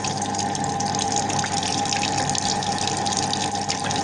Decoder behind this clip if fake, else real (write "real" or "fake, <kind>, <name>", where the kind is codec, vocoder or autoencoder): real